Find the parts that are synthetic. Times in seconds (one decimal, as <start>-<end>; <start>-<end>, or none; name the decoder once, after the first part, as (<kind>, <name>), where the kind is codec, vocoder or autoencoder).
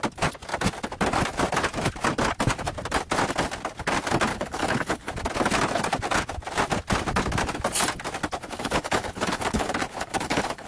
4.3-5.1 (codec, HILCodec); 8.4-10.7